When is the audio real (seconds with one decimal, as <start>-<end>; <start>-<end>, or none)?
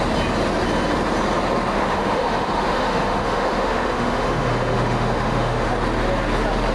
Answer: 0.0-1.7; 5.7-6.7